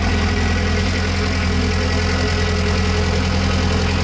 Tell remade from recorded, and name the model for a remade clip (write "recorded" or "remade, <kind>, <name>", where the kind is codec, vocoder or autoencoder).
recorded